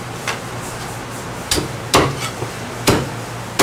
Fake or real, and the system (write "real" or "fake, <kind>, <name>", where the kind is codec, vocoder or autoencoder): real